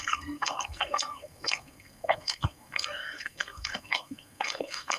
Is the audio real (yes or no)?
no